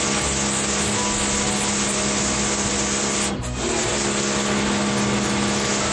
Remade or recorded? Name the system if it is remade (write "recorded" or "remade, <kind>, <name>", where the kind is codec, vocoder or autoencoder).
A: recorded